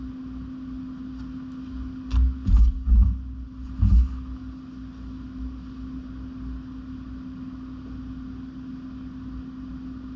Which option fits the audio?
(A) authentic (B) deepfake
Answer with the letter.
A